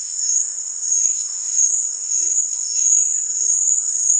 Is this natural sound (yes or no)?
no